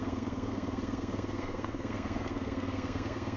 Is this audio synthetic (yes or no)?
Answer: yes